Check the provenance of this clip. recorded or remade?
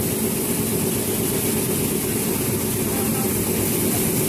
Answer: recorded